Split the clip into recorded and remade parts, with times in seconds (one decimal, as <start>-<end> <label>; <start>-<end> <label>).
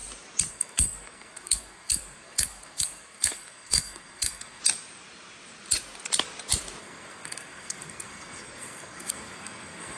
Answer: 0.0-0.5 recorded; 0.5-4.6 remade; 4.6-6.8 recorded; 6.8-10.0 remade